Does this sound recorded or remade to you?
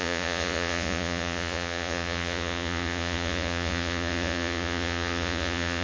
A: remade